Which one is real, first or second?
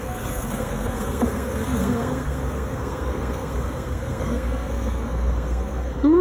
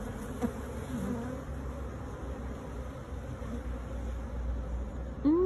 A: second